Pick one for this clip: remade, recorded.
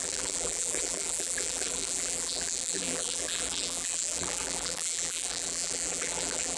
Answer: remade